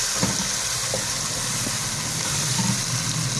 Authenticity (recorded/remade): recorded